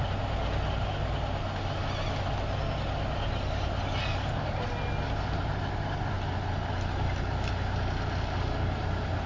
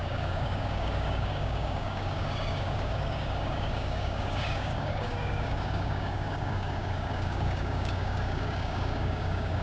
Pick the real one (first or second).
first